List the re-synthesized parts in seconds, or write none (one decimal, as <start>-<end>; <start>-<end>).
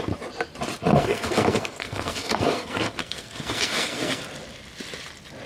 0.9-4.2